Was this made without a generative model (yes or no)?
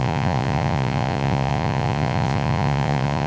no